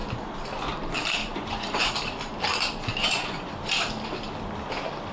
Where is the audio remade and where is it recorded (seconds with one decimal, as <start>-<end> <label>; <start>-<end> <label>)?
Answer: 0.0-1.2 recorded; 1.2-1.9 remade; 1.9-3.0 recorded; 3.0-3.5 remade; 3.5-5.1 recorded